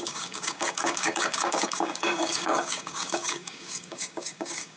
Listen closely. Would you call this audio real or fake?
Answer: fake